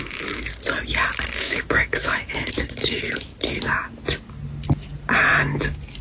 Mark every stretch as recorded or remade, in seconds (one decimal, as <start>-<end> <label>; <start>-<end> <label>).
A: 0.0-0.5 remade; 0.5-1.3 recorded; 1.3-3.3 remade; 3.3-6.0 recorded